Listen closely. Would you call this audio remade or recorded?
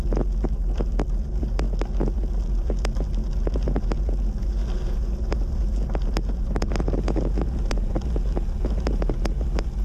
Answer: recorded